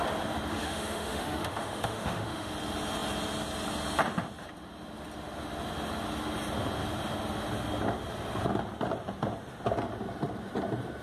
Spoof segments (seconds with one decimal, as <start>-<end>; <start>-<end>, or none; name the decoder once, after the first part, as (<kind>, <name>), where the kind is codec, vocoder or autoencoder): 0.5-2.5 (autoencoder, DAC-VAE)

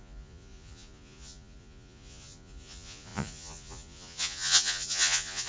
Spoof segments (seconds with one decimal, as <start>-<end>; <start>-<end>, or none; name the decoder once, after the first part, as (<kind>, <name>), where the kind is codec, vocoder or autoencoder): 0.0-5.5 (vocoder, Vocos)

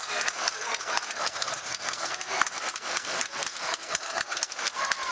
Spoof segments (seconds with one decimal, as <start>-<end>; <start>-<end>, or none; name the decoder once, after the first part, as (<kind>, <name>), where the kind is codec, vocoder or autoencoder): 0.0-5.1 (codec, SNAC)